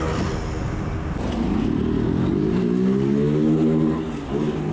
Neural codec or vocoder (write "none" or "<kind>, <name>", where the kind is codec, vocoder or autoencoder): none